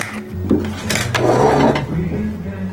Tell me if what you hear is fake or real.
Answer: real